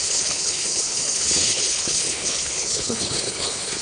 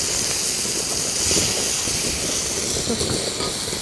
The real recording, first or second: second